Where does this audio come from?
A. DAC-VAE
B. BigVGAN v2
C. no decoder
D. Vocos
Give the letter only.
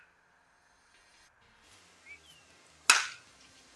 C